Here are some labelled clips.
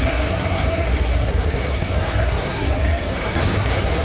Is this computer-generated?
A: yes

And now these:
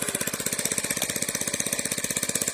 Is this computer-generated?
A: no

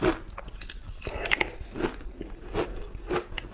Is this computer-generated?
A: no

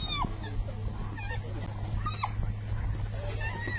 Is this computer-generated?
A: no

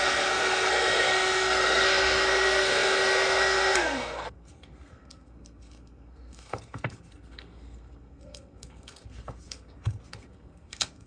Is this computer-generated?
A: yes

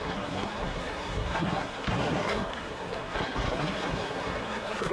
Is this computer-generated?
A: yes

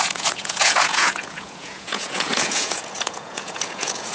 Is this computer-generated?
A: yes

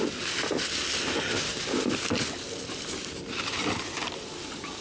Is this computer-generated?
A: no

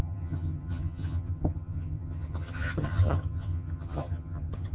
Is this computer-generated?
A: yes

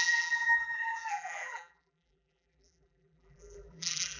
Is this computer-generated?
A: yes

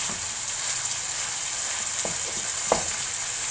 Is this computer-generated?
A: no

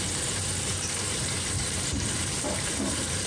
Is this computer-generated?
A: yes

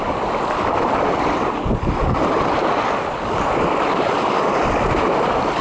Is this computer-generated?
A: no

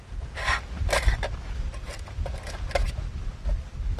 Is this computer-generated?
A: no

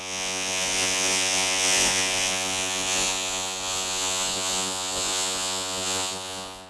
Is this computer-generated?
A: yes